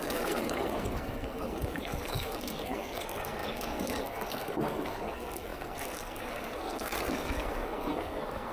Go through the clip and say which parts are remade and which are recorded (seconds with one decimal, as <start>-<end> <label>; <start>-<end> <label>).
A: 0.0-8.5 remade